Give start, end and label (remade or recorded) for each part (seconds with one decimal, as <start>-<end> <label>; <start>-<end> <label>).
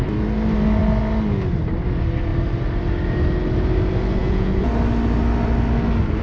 0.0-4.2 recorded; 4.2-4.7 remade; 4.7-6.2 recorded